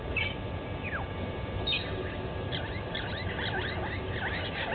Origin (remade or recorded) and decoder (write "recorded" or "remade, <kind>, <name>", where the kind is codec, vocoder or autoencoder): recorded